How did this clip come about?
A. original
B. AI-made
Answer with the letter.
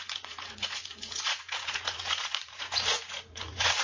B